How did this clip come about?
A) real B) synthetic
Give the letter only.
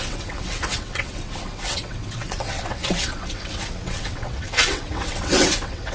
B